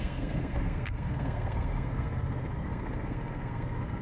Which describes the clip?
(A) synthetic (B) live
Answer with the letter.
A